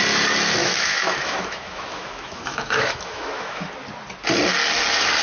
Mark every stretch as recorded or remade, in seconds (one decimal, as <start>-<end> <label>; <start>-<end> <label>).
0.0-0.6 recorded; 0.6-3.7 remade; 3.7-5.2 recorded